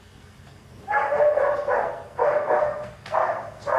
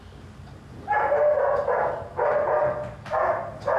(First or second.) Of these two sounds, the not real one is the first